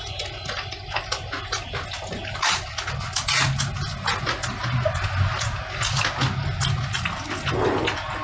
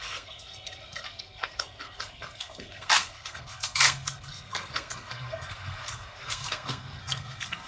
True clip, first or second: first